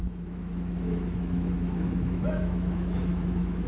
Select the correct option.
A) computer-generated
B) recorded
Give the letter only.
A